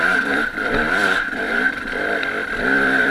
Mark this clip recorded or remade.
remade